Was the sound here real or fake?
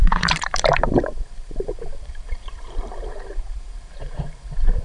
fake